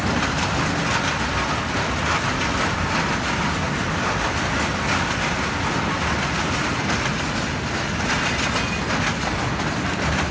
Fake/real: real